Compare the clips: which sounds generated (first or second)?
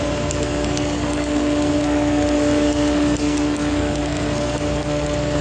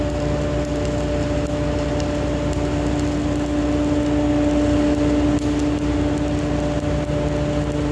first